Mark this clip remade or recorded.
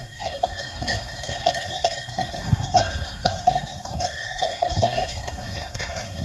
remade